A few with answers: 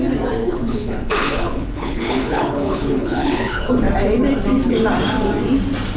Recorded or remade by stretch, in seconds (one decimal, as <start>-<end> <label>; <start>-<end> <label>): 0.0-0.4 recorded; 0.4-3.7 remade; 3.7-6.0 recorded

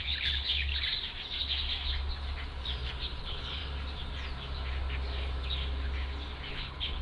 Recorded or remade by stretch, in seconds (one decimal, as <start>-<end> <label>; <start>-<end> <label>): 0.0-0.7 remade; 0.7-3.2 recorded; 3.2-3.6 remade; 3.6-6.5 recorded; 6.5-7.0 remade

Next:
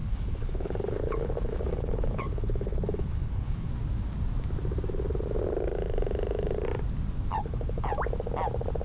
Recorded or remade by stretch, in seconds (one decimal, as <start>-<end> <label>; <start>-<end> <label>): 0.0-3.7 remade; 3.7-7.3 recorded; 7.3-7.9 remade; 7.9-8.8 recorded